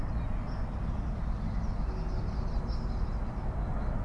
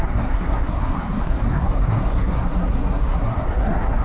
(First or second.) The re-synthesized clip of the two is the second